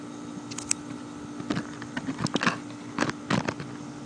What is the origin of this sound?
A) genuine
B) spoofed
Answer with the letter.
A